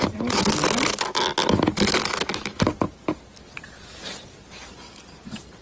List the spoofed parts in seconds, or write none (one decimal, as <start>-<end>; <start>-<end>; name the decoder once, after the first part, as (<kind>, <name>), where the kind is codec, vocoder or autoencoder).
none